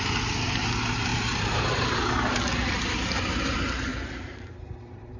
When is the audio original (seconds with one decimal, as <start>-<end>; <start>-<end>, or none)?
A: 0.0-1.1; 2.0-3.9

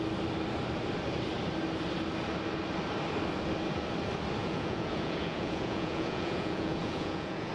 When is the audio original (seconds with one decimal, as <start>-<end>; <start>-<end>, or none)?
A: 0.0-4.4